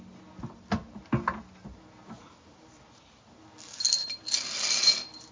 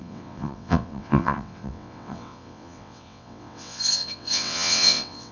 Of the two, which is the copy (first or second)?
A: second